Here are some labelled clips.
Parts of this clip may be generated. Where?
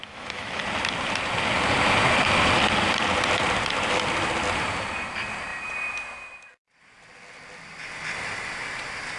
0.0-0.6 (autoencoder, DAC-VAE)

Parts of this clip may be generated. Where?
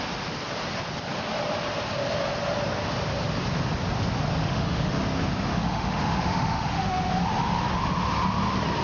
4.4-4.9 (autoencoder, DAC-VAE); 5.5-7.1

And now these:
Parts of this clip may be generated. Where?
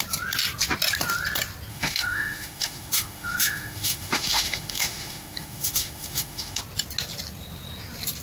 1.7-6.6 (autoencoder, DAC-VAE)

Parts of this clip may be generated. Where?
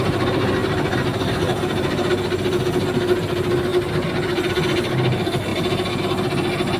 none